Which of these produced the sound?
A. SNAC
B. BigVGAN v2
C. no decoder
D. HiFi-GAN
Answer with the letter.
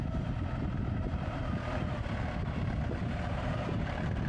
B